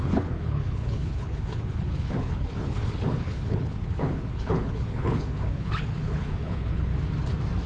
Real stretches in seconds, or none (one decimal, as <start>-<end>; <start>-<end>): 6.9-7.7